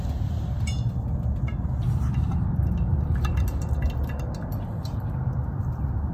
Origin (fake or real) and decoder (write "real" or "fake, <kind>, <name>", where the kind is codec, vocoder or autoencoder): real